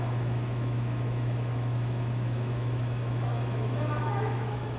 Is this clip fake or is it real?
fake